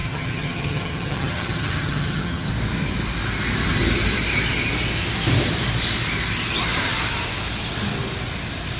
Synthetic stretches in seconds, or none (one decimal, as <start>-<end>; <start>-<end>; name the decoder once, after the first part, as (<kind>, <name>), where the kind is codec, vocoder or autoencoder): 0.0-2.5 (vocoder, HiFi-GAN)